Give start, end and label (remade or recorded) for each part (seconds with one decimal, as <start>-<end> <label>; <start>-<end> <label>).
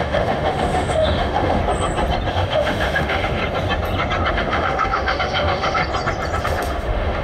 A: 0.0-1.6 remade; 1.6-2.3 recorded; 2.3-3.4 remade; 3.4-4.3 recorded; 4.3-5.8 remade; 5.8-6.4 recorded; 6.4-7.2 remade